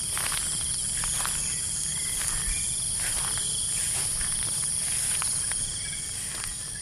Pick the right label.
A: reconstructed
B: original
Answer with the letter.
B